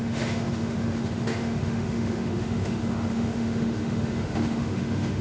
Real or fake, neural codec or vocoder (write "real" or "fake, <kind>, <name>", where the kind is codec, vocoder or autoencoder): fake, autoencoder, DAC-VAE